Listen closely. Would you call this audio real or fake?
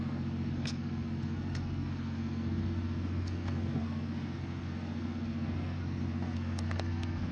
fake